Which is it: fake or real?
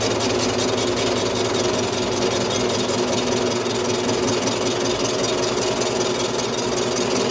real